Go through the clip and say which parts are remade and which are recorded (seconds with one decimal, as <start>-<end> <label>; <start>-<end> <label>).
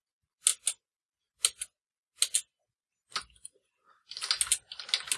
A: 0.0-5.2 recorded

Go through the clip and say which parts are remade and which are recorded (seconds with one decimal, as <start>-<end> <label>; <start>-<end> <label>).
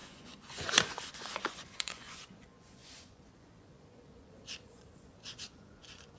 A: 0.0-6.2 remade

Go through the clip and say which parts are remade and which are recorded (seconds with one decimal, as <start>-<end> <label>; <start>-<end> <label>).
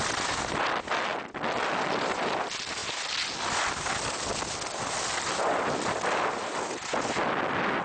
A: 0.0-7.8 recorded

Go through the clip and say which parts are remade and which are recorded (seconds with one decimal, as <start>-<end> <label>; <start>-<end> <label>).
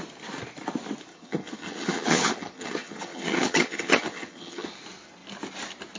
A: 0.0-1.1 recorded; 1.1-4.7 remade; 4.7-6.0 recorded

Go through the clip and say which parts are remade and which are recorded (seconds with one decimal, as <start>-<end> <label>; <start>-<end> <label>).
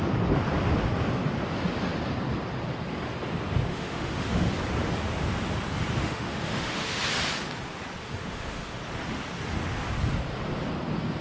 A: 0.0-3.7 recorded; 3.7-4.5 remade; 4.5-6.0 recorded; 6.0-7.0 remade; 7.0-8.0 recorded; 8.0-8.8 remade; 8.8-11.2 recorded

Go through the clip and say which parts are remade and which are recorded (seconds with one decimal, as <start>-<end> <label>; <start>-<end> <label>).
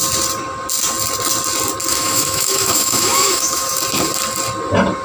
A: 0.0-1.9 recorded; 1.9-3.8 remade; 3.8-5.0 recorded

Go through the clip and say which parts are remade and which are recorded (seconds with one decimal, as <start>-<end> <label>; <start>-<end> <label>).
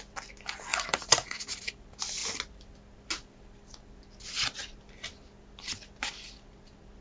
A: 0.0-0.7 recorded; 0.7-1.7 remade; 1.7-7.0 recorded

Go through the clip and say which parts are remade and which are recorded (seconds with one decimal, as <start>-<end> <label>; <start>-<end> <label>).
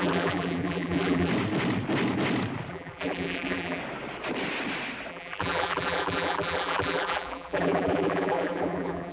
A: 0.0-1.3 remade; 1.3-2.7 recorded; 2.7-3.8 remade; 3.8-5.1 recorded; 5.1-9.1 remade